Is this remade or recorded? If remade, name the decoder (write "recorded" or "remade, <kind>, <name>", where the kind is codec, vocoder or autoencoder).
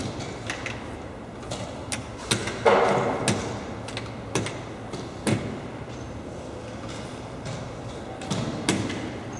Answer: recorded